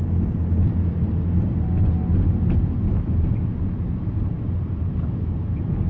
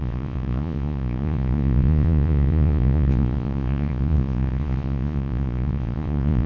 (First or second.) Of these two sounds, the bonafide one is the first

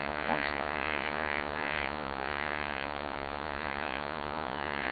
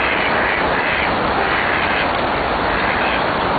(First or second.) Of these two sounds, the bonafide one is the second